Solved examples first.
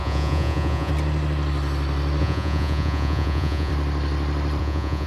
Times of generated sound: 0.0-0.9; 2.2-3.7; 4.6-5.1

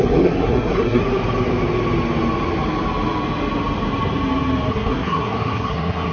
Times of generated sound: 0.0-1.0; 4.7-6.1

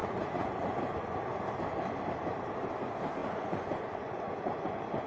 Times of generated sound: 0.0-0.8; 3.2-5.1

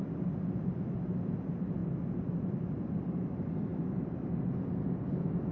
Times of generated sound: none

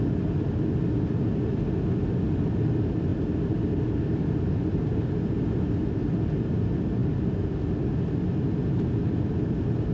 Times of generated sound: 7.0-7.9

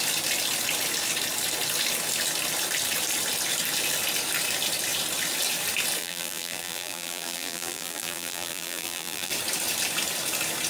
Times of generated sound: 6.0-9.3